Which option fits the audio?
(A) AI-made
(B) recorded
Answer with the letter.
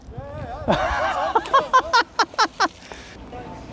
B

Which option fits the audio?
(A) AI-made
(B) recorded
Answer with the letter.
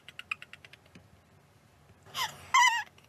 B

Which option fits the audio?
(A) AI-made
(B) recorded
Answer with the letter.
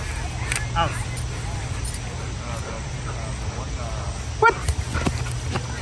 B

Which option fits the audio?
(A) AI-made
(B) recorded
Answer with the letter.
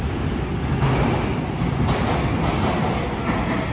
B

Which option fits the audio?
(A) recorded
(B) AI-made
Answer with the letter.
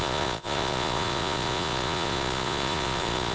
B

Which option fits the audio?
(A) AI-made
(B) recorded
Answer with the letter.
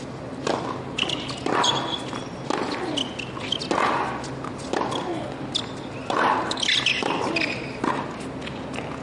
B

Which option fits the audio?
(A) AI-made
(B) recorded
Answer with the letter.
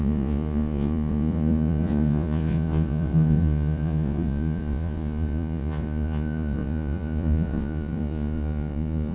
A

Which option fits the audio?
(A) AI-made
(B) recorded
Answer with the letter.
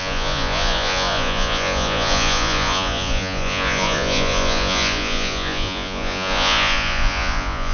A